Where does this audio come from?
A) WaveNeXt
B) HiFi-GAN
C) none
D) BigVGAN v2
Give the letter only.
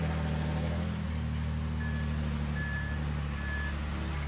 C